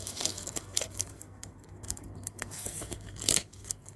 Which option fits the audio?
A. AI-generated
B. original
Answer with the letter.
A